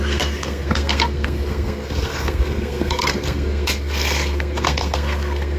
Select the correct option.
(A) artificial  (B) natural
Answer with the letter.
A